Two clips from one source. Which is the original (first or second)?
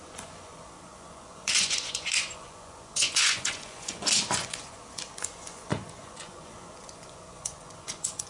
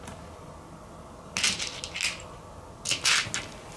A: second